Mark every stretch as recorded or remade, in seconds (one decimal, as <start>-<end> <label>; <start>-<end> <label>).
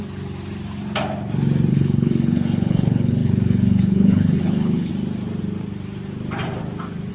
0.0-1.7 recorded; 1.7-4.9 remade; 4.9-7.1 recorded